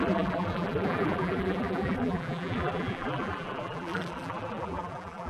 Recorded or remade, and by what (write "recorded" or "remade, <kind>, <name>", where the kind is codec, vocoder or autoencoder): remade, vocoder, BigVGAN v2